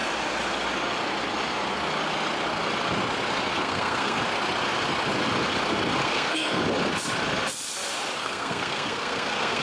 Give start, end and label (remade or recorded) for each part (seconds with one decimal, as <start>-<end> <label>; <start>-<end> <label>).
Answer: 0.0-3.5 recorded; 3.5-4.2 remade; 4.2-6.0 recorded; 6.0-6.6 remade; 6.6-8.2 recorded; 8.2-9.6 remade